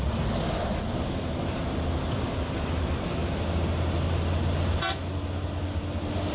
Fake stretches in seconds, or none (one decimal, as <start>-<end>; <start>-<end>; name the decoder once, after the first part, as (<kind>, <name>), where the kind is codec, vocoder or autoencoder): none